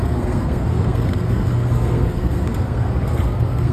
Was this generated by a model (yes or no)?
yes